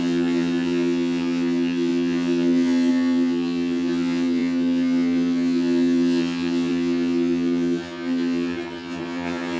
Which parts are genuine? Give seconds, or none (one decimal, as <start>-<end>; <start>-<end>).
none